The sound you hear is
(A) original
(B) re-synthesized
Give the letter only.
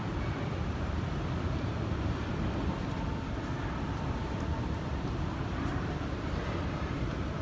B